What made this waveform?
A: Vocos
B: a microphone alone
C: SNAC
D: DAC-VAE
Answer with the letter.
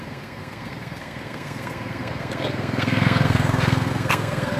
C